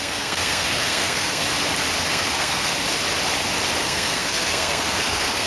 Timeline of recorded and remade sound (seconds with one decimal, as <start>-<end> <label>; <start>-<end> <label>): 0.0-1.4 remade; 1.4-2.1 recorded; 2.1-2.7 remade; 2.7-3.8 recorded; 3.8-5.5 remade